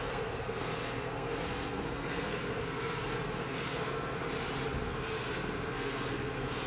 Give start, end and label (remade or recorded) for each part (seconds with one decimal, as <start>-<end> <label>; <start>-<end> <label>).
0.0-4.2 remade; 4.2-4.8 recorded; 4.8-6.7 remade